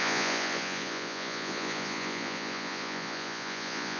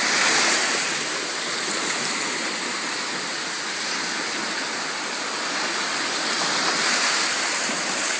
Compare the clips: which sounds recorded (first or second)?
second